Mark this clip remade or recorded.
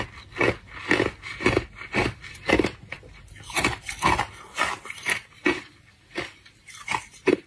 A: recorded